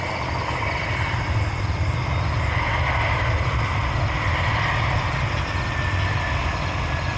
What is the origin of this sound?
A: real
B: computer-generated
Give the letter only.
A